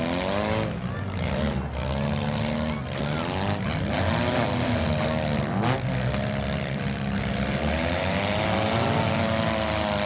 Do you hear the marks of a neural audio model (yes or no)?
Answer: no